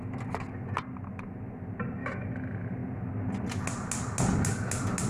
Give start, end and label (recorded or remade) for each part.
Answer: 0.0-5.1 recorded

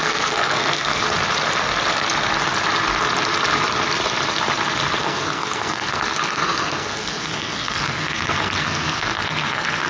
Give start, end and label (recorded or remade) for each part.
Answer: 0.0-1.0 remade; 1.0-5.0 recorded; 5.0-9.9 remade